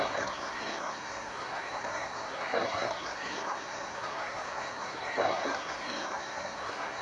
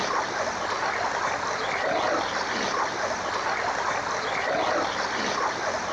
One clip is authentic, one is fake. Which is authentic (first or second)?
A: second